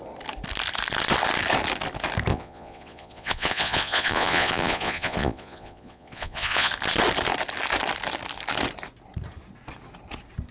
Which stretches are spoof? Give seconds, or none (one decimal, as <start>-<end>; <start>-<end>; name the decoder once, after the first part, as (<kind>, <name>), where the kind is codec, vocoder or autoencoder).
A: 2.3-6.7 (vocoder, Vocos)